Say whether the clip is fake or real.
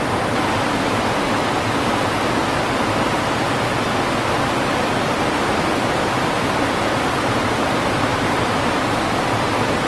real